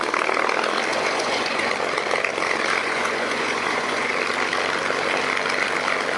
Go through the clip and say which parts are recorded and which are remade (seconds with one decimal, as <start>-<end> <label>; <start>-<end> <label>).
0.0-0.9 recorded; 0.9-1.7 remade; 1.7-2.8 recorded; 2.8-4.1 remade; 4.1-6.2 recorded